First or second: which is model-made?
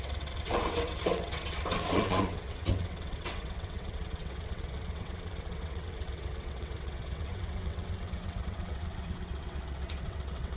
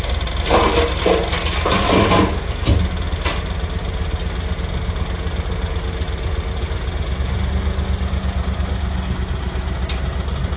first